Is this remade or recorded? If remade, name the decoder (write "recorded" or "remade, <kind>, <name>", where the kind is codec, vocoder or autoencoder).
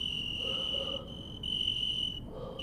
remade, vocoder, BigVGAN v2